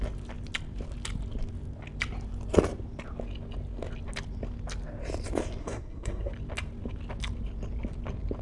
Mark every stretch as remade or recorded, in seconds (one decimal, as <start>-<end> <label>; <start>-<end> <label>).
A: 0.0-5.6 recorded; 5.6-6.3 remade; 6.3-8.4 recorded